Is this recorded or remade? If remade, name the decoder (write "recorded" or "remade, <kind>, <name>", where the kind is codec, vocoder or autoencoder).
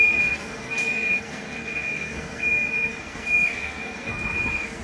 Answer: remade, codec, SNAC